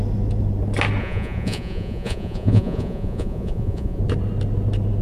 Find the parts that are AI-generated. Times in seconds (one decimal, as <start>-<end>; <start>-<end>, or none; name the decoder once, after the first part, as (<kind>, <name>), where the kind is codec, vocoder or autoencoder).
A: 1.0-4.0 (vocoder, Vocos)